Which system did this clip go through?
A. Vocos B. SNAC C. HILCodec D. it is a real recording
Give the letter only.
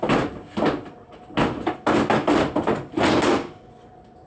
D